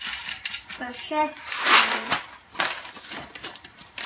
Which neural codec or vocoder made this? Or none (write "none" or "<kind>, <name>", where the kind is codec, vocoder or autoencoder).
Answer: vocoder, BigVGAN v2